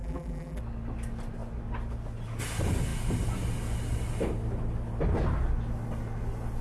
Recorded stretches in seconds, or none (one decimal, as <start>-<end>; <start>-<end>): 0.6-6.6